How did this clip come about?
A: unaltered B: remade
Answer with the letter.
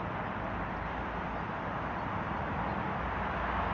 A